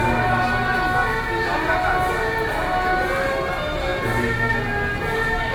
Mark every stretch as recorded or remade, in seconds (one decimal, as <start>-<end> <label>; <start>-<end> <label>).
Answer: 0.0-5.5 recorded